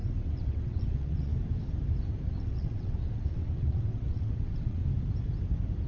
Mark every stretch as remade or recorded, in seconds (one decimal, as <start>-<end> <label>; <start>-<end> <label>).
0.0-1.3 remade; 1.3-2.4 recorded; 2.4-4.8 remade; 4.8-5.9 recorded